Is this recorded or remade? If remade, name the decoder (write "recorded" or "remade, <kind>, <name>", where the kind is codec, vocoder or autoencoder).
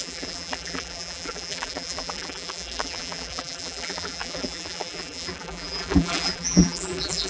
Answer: remade, vocoder, BigVGAN v2